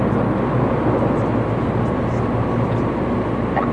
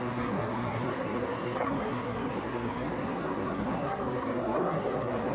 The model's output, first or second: second